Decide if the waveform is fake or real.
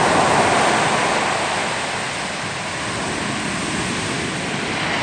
real